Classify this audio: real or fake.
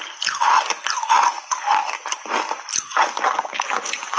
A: real